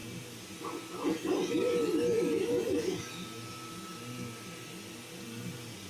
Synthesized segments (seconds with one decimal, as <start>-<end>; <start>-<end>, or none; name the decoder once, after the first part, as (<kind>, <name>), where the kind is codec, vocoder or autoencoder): none